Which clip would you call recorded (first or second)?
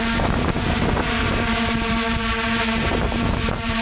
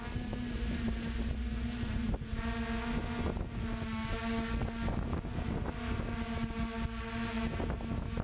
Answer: second